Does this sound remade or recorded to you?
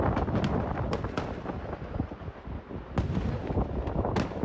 recorded